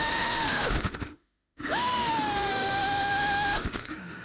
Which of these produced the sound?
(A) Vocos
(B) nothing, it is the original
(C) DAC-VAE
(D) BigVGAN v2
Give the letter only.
C